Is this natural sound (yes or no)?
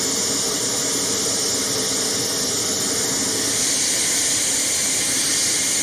yes